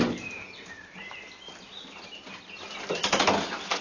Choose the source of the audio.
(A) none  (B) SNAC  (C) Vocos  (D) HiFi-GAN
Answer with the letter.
A